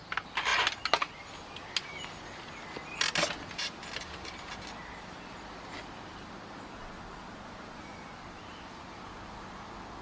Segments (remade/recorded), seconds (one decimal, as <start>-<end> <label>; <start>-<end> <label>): 0.0-10.0 recorded